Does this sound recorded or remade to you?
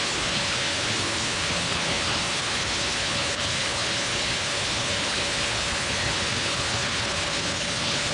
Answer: remade